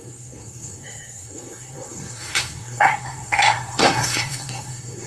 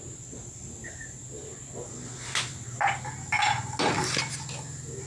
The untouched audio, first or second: second